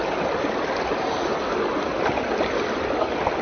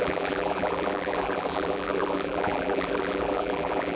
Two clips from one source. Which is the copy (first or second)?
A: second